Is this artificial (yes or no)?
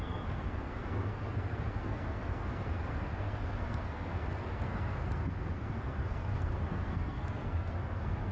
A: yes